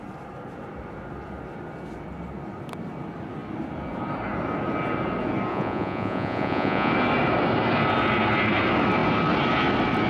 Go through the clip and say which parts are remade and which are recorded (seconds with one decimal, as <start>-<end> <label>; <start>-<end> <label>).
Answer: 0.0-5.5 recorded; 5.5-6.9 remade; 6.9-10.1 recorded